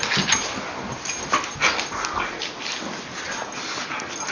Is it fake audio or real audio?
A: real